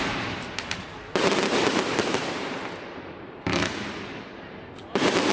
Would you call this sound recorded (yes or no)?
yes